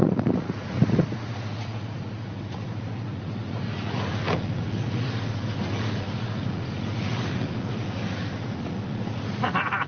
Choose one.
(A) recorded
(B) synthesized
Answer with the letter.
B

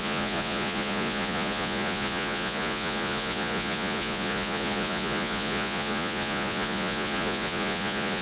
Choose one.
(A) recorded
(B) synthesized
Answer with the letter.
B